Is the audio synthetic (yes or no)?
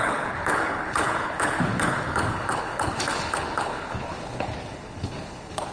yes